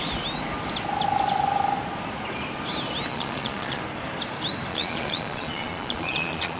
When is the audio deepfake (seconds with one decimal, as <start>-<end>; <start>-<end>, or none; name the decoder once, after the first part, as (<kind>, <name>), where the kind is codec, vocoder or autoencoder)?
3.1-3.8 (vocoder, Vocos); 4.7-6.6